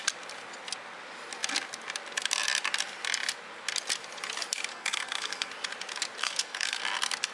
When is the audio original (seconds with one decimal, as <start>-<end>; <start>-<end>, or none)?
0.0-4.7; 5.5-6.2; 6.8-7.3